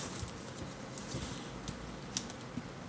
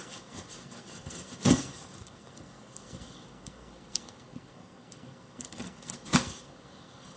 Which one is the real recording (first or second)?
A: first